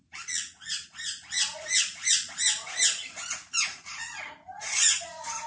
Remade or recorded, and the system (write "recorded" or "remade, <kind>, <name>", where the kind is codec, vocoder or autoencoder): remade, vocoder, Vocos